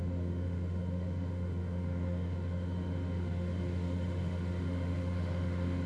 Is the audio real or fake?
fake